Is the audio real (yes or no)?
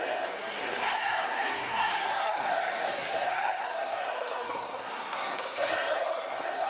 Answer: no